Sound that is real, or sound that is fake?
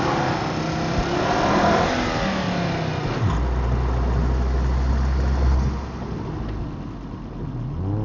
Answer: real